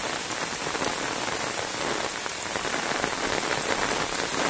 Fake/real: real